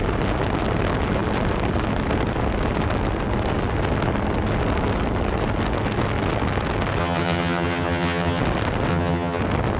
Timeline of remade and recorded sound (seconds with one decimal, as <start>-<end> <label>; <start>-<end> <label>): 0.0-7.0 recorded; 7.0-8.4 remade; 8.4-8.9 recorded; 8.9-9.4 remade; 9.4-9.8 recorded